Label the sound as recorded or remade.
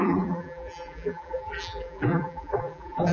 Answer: remade